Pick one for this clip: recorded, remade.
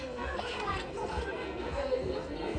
remade